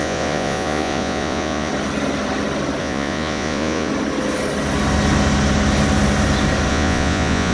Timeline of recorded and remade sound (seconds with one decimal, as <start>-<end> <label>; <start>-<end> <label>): 0.0-1.7 remade; 1.7-2.8 recorded; 2.8-3.9 remade; 3.9-6.7 recorded; 6.7-7.5 remade